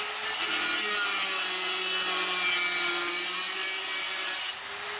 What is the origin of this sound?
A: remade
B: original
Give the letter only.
B